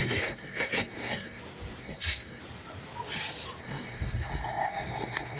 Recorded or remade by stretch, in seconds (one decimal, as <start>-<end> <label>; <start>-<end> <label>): 0.0-1.4 remade; 1.4-1.8 recorded; 1.8-2.4 remade; 2.4-3.6 recorded; 3.6-5.4 remade